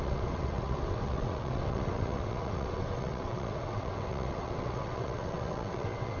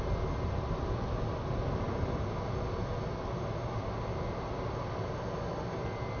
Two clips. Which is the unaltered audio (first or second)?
second